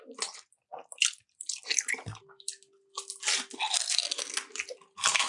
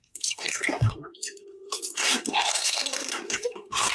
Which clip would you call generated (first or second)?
second